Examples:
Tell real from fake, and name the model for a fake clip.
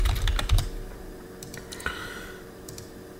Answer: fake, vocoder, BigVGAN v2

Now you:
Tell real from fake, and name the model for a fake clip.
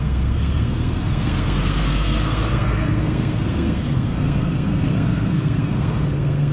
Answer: fake, codec, SNAC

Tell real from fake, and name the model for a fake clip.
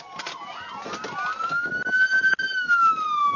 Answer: real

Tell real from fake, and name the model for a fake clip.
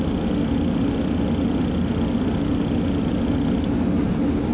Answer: real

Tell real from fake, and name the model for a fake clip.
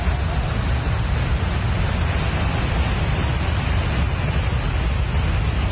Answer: real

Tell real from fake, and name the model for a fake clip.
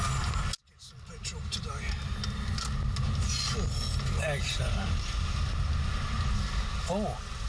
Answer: real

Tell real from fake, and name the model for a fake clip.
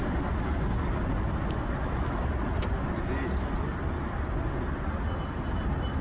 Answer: real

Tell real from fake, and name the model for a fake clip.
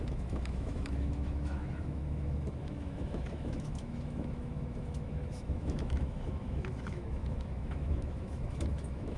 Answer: fake, autoencoder, DAC-VAE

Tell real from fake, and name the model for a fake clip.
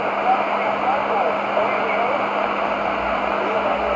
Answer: real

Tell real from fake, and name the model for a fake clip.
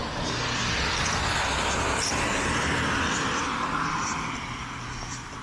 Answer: real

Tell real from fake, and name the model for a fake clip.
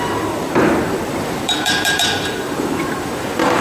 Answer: fake, vocoder, BigVGAN v2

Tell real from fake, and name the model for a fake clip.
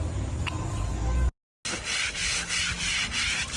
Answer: real